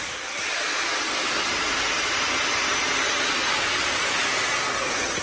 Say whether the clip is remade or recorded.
recorded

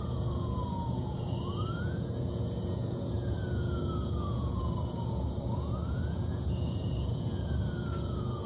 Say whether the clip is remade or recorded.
remade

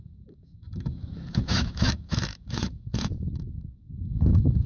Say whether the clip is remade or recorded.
remade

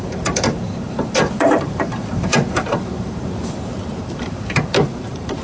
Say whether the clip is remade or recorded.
remade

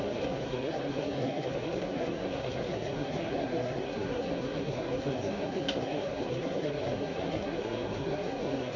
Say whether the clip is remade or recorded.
remade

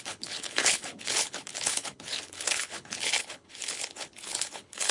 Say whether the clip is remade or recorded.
remade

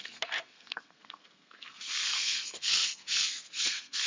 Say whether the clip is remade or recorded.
remade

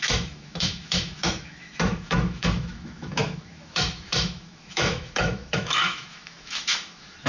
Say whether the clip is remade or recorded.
remade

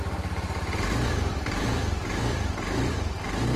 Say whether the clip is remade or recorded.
recorded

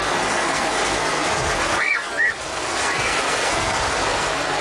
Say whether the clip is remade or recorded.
remade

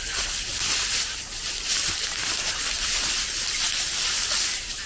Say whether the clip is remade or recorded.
recorded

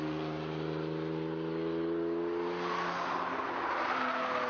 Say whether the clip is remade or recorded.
recorded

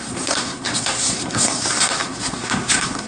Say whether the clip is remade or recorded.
remade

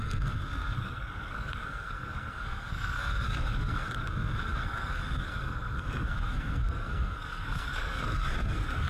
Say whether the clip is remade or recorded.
remade